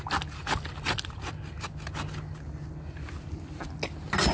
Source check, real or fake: real